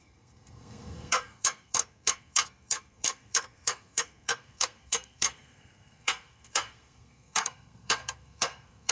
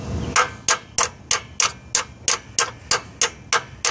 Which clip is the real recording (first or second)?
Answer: second